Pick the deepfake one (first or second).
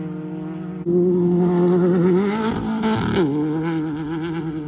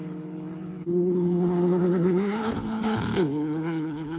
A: second